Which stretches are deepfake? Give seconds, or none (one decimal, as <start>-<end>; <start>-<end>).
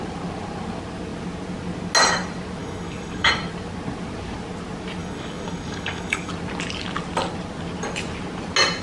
2.6-3.3; 5.0-6.3